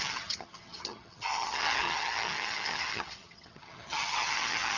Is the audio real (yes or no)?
no